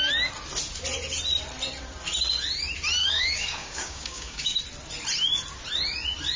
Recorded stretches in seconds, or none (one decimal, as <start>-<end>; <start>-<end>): 0.0-3.0; 4.6-6.4